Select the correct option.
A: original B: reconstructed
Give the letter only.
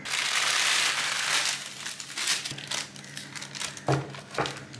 A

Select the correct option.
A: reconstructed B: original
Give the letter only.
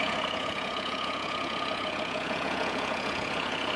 A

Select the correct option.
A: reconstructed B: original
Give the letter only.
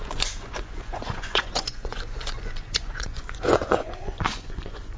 A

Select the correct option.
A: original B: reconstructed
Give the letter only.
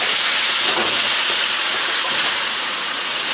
B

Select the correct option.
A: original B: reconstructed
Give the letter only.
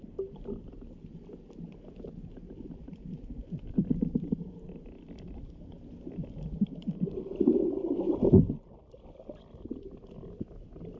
A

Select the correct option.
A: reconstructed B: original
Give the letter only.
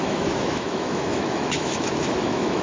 A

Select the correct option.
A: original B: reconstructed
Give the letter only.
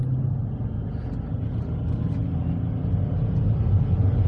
A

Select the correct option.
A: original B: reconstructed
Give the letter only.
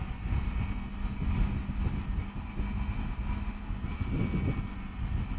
A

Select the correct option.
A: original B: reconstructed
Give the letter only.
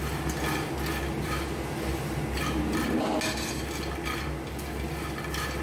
A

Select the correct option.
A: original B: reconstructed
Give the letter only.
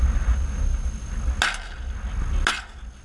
A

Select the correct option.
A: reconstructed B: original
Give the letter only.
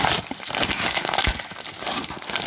B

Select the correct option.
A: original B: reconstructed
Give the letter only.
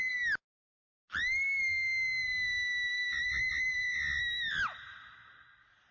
A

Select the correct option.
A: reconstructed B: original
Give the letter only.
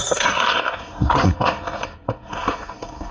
A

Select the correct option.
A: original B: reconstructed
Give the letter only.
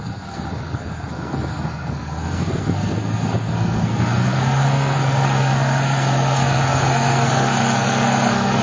B